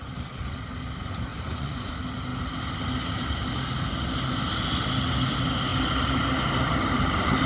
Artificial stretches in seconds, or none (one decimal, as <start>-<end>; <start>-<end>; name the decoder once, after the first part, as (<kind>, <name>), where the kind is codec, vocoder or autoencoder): 1.3-1.9 (vocoder, Vocos)